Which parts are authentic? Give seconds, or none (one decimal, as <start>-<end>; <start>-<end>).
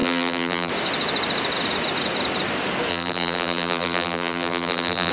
0.7-2.9